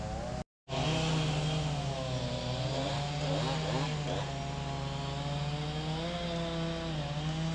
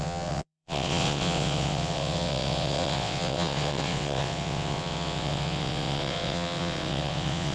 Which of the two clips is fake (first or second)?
second